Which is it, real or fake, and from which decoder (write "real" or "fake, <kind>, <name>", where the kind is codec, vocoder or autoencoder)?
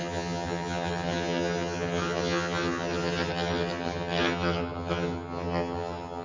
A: fake, vocoder, HiFi-GAN